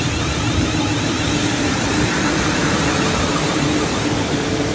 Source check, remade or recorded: remade